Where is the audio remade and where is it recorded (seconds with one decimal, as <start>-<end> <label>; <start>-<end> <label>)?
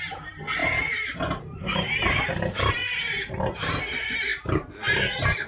0.0-4.3 remade; 4.3-5.5 recorded